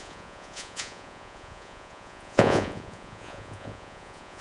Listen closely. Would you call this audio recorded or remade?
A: remade